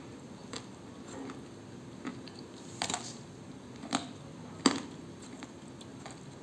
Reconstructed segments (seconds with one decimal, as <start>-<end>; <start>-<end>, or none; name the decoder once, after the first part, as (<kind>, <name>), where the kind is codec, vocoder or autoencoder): none